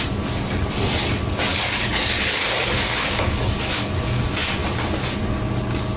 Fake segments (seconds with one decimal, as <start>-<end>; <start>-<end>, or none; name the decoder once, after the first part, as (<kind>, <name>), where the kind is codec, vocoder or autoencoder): 1.5-3.9 (codec, DAC)